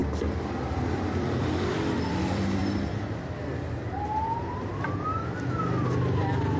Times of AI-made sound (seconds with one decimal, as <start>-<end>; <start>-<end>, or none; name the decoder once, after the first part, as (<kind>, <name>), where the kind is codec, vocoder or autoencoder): 0.8-2.6 (vocoder, BigVGAN v2)